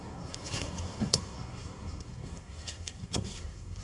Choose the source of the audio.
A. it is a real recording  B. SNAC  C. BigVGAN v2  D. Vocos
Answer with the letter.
B